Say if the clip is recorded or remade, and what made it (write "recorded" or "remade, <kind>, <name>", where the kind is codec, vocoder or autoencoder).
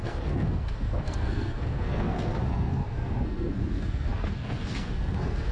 remade, codec, SNAC